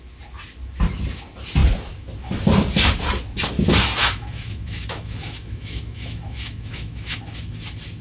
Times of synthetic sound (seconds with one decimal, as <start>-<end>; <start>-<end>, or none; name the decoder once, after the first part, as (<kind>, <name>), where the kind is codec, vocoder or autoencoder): 4.0-7.2 (autoencoder, DAC-VAE)